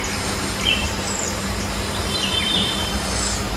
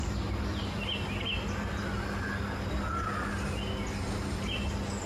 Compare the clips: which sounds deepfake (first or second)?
first